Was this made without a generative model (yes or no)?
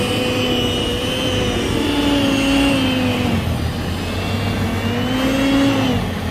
yes